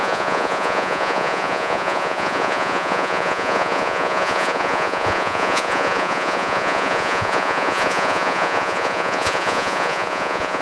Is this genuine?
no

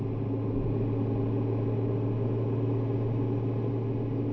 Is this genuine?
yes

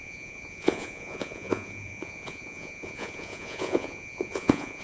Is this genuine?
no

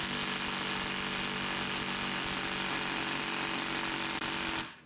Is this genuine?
yes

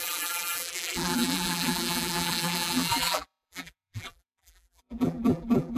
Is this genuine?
no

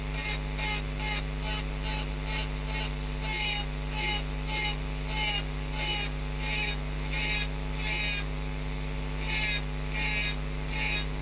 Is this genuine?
yes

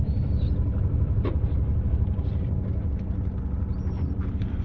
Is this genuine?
yes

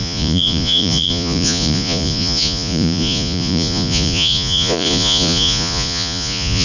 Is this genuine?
no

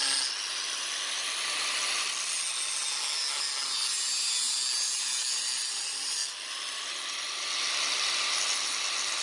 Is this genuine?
yes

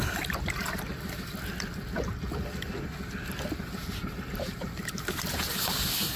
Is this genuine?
yes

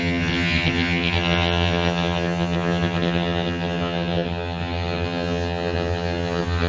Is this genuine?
no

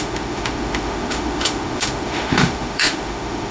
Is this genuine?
no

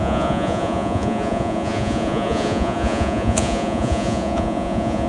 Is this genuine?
no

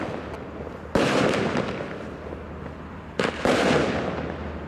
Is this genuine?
yes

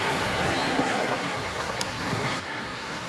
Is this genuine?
no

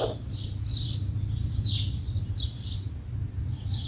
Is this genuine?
yes